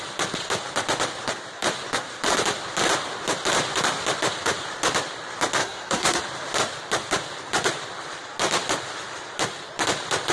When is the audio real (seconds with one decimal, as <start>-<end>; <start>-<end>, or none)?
0.0-5.6; 6.2-10.3